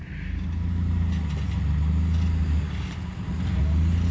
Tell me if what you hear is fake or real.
real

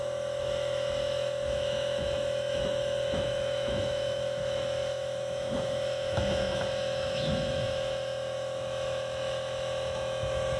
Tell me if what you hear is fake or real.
fake